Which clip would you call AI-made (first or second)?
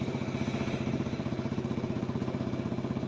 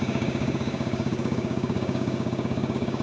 second